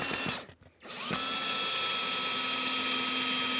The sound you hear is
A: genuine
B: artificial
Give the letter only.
A